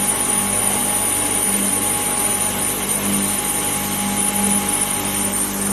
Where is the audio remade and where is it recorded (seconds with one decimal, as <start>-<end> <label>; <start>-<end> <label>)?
0.0-5.7 recorded